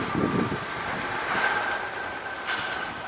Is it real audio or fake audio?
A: real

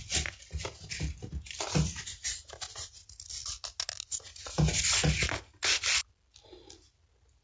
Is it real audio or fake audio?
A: real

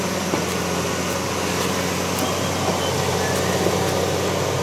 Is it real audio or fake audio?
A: real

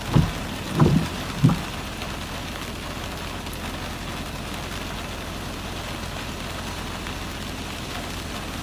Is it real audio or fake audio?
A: real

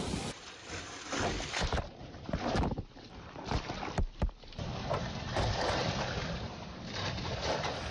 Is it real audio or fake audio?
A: fake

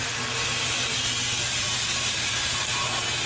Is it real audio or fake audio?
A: fake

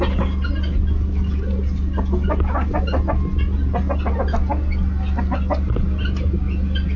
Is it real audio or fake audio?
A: real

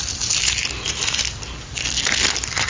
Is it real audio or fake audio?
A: fake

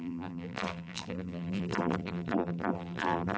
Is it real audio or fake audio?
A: fake